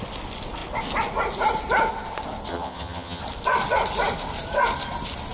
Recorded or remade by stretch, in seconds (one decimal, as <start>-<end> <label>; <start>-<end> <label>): 0.0-2.5 recorded; 2.5-3.2 remade; 3.2-5.3 recorded